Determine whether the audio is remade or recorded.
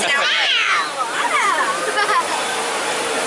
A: remade